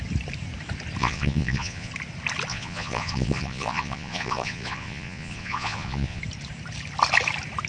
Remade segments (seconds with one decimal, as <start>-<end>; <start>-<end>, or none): 1.0-1.9; 2.5-6.2